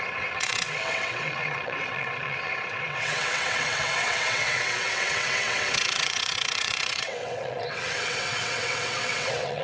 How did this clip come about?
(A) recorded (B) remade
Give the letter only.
B